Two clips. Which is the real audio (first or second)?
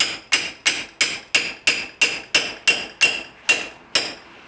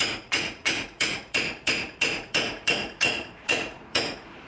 first